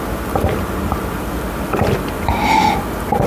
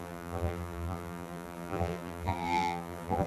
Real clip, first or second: first